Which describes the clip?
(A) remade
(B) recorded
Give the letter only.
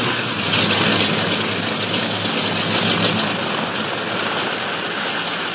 B